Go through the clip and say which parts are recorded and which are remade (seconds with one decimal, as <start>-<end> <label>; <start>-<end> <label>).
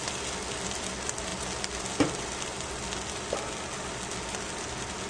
0.0-5.1 recorded